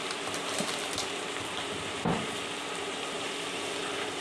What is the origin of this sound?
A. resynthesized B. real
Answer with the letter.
A